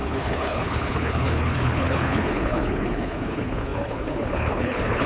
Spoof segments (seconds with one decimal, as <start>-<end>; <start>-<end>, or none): 0.0-5.1